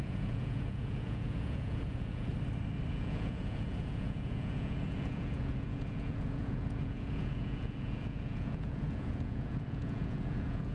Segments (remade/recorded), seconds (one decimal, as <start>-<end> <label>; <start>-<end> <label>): 0.0-2.3 remade; 2.3-2.9 recorded; 2.9-10.7 remade